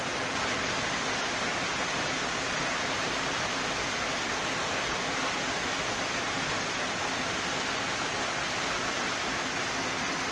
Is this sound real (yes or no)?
yes